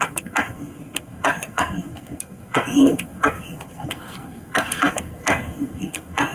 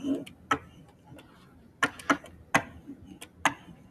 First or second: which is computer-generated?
first